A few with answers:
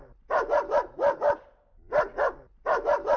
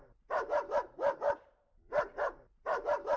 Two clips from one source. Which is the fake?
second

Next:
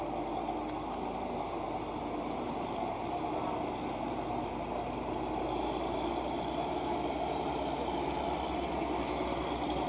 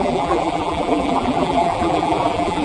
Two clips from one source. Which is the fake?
second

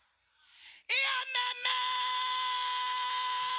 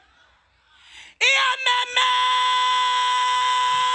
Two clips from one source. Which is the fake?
first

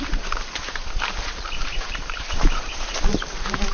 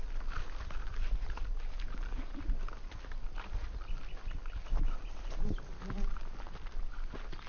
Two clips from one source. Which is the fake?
first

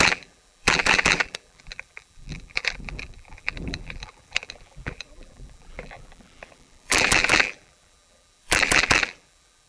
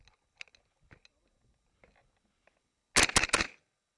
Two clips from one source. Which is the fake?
first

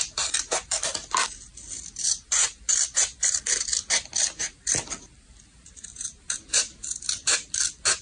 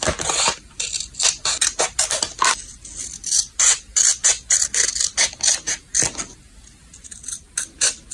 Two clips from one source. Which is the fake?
first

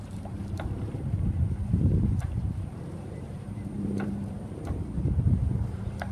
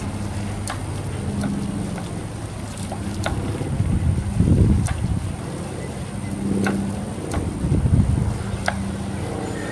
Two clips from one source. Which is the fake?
first